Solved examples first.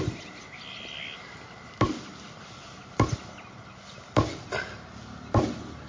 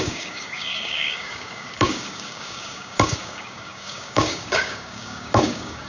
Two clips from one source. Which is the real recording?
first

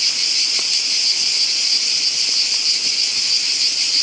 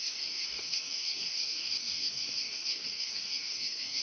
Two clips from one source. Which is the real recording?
first